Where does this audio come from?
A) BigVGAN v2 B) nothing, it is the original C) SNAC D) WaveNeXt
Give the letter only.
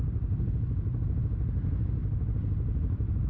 B